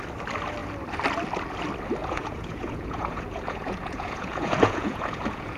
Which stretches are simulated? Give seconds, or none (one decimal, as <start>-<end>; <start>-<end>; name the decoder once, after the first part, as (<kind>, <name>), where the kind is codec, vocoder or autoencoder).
2.0-5.6 (vocoder, Vocos)